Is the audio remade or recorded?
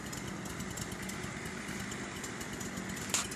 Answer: recorded